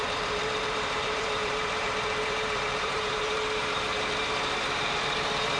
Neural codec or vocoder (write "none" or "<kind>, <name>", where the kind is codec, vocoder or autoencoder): vocoder, BigVGAN v2